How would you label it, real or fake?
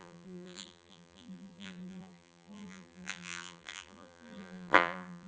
fake